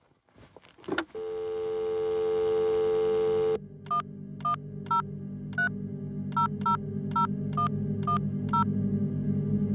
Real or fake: real